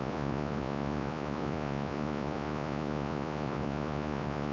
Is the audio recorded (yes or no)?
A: no